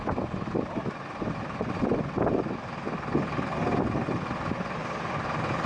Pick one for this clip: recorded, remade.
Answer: recorded